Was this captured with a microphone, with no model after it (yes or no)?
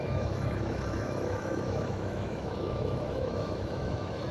no